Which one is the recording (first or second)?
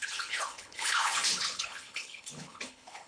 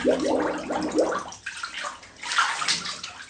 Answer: second